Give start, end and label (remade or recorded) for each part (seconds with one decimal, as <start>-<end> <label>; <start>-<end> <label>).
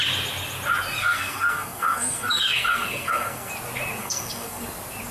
0.0-1.0 recorded; 1.0-3.5 remade; 3.5-4.0 recorded; 4.0-4.6 remade; 4.6-5.1 recorded